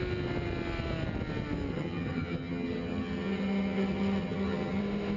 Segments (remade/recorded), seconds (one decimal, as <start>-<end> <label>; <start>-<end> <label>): 0.0-1.7 recorded; 1.7-4.8 remade; 4.8-5.2 recorded